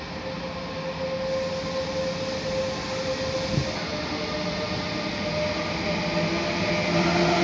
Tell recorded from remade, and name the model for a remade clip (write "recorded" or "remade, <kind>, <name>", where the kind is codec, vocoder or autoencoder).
recorded